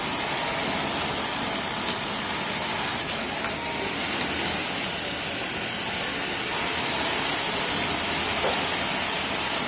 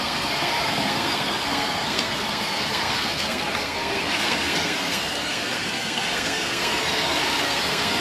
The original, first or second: first